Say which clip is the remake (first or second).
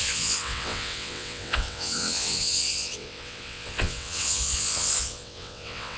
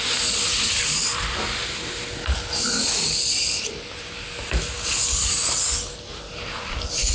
first